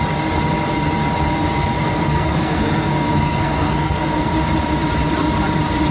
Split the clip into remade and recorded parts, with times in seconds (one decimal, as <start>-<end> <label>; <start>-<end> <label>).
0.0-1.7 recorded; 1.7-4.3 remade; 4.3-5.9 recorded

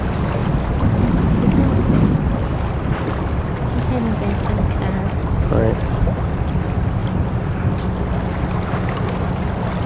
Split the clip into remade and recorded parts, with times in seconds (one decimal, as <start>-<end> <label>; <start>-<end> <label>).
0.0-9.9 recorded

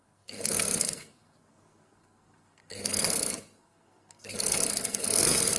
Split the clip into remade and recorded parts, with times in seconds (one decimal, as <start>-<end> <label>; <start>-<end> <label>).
0.0-5.6 remade